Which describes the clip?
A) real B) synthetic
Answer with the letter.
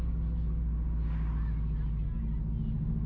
A